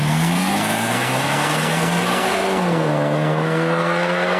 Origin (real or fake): fake